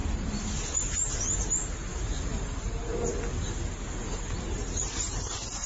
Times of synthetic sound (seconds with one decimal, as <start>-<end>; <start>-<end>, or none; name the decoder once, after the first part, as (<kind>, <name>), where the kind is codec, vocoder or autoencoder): 0.0-3.1 (vocoder, BigVGAN v2); 4.0-4.9